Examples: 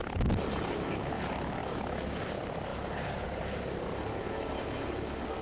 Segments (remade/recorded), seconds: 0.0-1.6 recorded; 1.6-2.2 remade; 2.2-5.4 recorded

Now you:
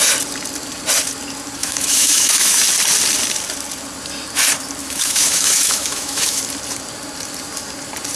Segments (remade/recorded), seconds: 0.0-1.6 recorded; 1.6-2.6 remade; 2.6-4.8 recorded; 4.8-6.4 remade; 6.4-8.2 recorded

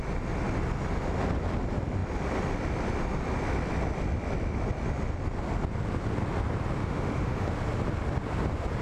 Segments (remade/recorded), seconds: 0.0-6.8 recorded; 6.8-7.5 remade; 7.5-8.8 recorded

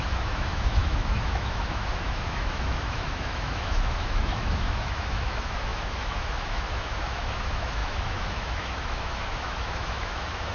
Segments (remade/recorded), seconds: 0.0-10.5 remade

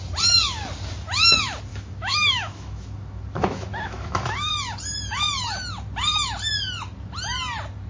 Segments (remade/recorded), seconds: 0.0-1.7 recorded; 1.7-4.5 remade; 4.5-7.9 recorded

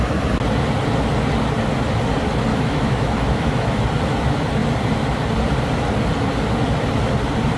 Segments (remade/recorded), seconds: 0.0-2.5 recorded; 2.5-3.8 remade; 3.8-7.6 recorded

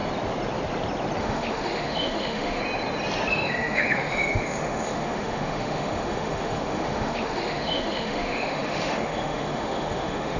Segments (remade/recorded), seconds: 0.0-1.2 recorded; 1.2-2.6 remade; 2.6-3.3 recorded; 3.3-10.4 remade

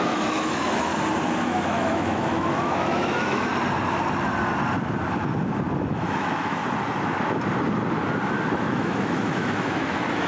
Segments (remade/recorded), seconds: 0.0-0.9 remade; 0.9-1.4 recorded; 1.4-3.5 remade; 3.5-5.9 recorded; 5.9-6.6 remade; 6.6-8.6 recorded; 8.6-10.3 remade